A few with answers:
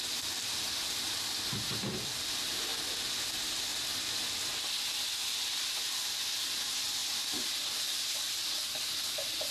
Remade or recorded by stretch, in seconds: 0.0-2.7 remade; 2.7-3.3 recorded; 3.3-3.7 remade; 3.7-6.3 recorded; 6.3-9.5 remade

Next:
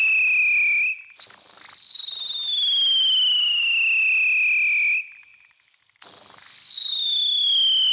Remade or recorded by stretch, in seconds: 0.0-7.9 recorded

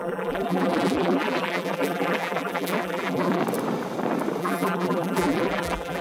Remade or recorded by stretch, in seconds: 0.0-3.4 remade; 3.4-4.4 recorded; 4.4-6.0 remade

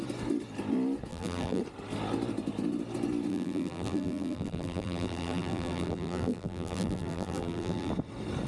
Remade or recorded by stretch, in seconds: 0.0-1.1 recorded; 1.1-1.6 remade; 1.6-3.3 recorded; 3.3-7.9 remade; 7.9-8.5 recorded

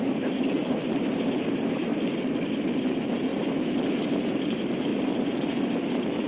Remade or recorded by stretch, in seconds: 0.0-1.9 remade; 1.9-2.5 recorded; 2.5-3.3 remade; 3.3-4.0 recorded; 4.0-6.3 remade